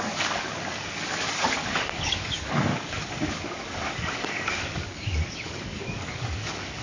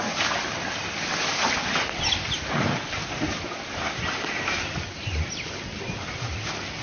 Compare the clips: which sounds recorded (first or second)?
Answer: second